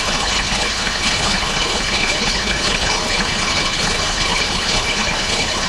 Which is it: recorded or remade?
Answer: remade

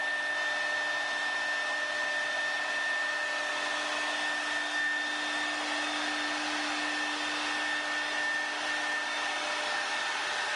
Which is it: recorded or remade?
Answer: recorded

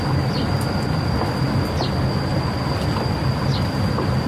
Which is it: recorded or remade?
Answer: recorded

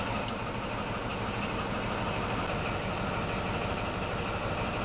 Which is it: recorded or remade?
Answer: recorded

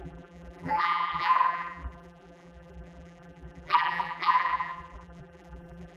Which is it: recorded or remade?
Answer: remade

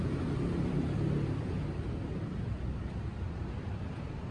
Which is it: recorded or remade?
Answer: recorded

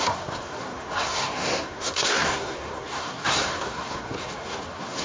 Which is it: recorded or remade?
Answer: remade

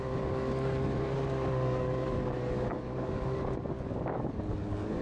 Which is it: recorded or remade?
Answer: remade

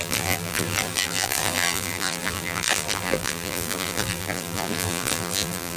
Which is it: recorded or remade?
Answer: remade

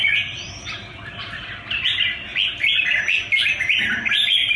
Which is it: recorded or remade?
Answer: recorded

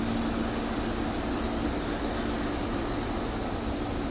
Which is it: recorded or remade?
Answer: recorded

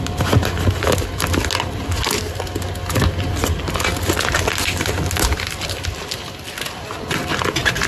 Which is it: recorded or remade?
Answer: recorded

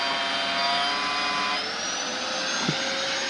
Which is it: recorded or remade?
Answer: recorded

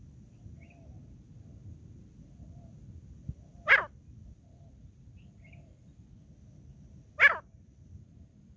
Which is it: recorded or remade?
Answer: recorded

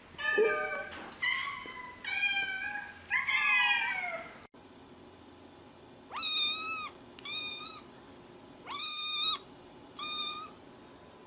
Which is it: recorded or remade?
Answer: recorded